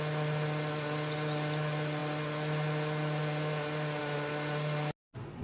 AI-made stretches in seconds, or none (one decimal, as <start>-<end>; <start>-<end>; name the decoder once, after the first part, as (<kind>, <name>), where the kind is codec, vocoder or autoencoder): none

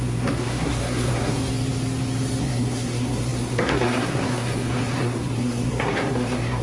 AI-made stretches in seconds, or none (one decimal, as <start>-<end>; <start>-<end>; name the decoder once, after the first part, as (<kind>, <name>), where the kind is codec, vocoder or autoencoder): 0.0-1.4 (codec, SNAC); 2.4-6.6